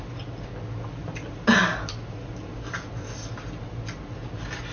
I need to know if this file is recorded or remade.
recorded